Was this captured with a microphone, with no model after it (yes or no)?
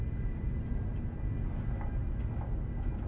yes